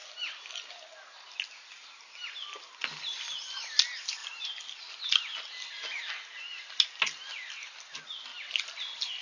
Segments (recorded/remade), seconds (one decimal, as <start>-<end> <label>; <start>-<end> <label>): 0.0-9.2 recorded